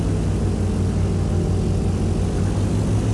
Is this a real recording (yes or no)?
yes